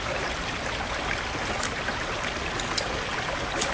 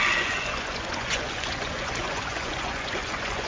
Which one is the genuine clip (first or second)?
first